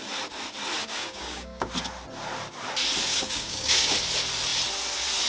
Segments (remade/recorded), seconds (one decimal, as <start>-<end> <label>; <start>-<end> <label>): 0.0-0.8 recorded; 0.8-1.7 remade; 1.7-3.1 recorded; 3.1-3.9 remade; 3.9-5.3 recorded